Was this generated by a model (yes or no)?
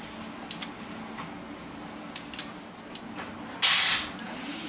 no